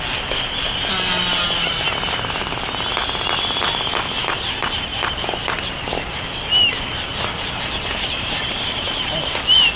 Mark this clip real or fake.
real